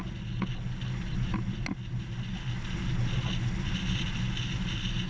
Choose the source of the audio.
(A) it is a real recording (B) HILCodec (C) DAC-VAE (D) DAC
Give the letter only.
A